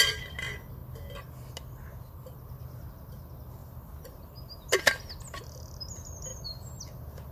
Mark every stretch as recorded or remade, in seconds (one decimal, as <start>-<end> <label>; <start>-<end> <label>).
0.0-3.6 recorded; 3.6-4.2 remade; 4.2-6.3 recorded; 6.3-6.8 remade; 6.8-7.3 recorded